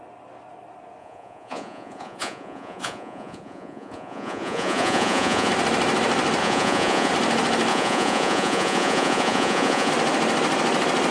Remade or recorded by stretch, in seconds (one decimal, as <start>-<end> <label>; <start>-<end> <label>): 0.0-1.0 recorded; 1.0-5.5 remade; 5.5-6.4 recorded; 6.4-7.1 remade; 7.1-7.7 recorded; 7.7-9.9 remade; 9.9-11.1 recorded